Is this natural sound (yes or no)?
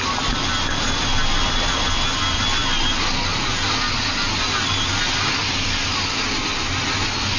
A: yes